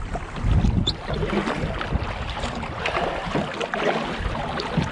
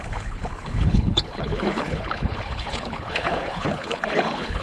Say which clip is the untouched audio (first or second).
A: first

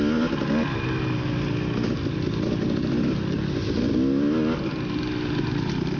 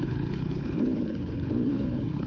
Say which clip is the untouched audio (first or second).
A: first